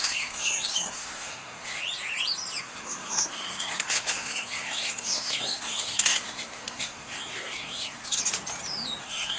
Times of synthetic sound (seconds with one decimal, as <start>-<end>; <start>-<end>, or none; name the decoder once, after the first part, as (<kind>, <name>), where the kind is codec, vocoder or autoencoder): 0.0-1.8 (codec, SNAC); 2.6-8.2; 9.0-9.4